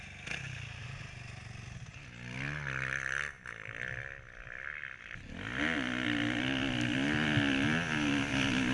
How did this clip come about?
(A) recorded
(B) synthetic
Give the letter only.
A